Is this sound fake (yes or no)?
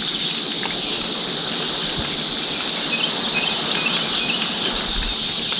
no